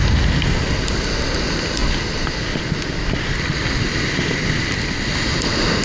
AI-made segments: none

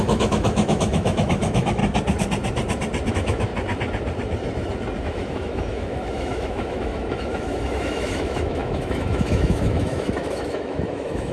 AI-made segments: 0.0-1.8 (autoencoder, DAC-VAE); 3.1-3.5; 5.0-11.3

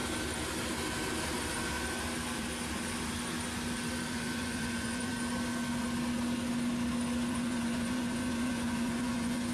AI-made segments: 4.1-5.1 (vocoder, Vocos); 7.3-9.5

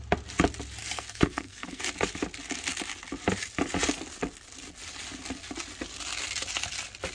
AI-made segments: 0.8-1.8 (codec, SNAC)

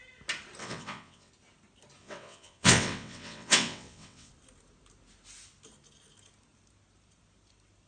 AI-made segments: 0.6-1.3 (vocoder, WaveNeXt); 2.0-4.3

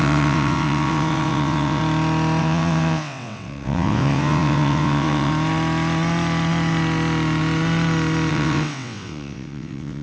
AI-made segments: 0.0-1.8 (vocoder, WaveNeXt); 2.4-5.3; 8.3-10.0

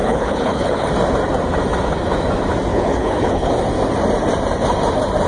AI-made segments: 0.0-0.9 (codec, HILCodec); 2.7-3.5